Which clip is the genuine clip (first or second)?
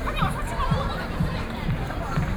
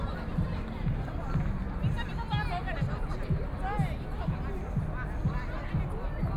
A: second